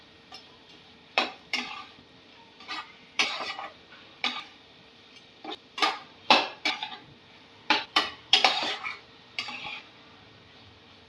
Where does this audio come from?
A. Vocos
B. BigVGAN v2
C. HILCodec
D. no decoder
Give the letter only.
B